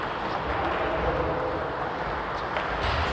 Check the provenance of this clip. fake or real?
fake